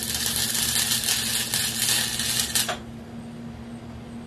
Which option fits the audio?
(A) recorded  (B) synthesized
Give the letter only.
A